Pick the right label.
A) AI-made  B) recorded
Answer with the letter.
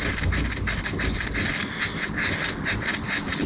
B